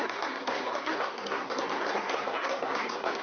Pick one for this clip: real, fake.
fake